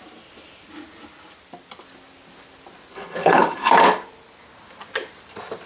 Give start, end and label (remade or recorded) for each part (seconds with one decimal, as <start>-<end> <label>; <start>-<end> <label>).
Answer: 0.0-2.9 recorded; 2.9-3.7 remade; 3.7-5.7 recorded